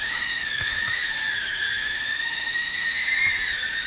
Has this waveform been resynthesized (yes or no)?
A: yes